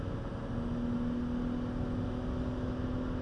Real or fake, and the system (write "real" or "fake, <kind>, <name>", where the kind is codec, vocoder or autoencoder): real